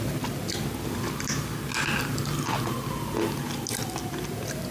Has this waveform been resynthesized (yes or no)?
no